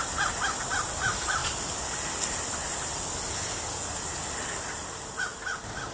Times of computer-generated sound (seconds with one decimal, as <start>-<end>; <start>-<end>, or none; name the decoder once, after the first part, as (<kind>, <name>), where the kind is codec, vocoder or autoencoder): none